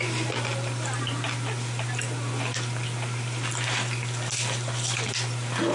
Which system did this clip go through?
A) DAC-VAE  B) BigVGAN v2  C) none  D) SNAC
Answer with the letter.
B